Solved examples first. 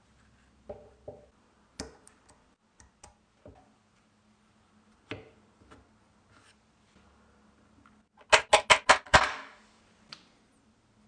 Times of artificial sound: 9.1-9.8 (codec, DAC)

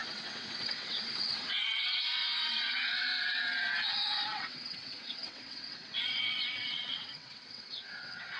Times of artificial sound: 0.0-8.4 (vocoder, WaveNeXt)

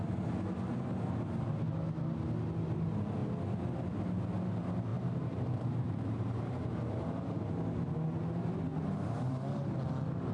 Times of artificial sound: 4.9-7.6 (vocoder, BigVGAN v2); 8.7-9.6